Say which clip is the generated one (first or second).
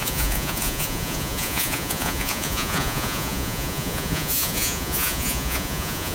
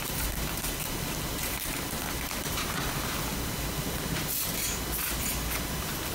first